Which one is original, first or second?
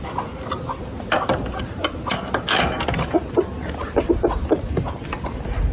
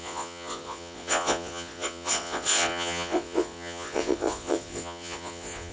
first